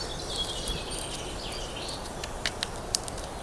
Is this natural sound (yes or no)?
yes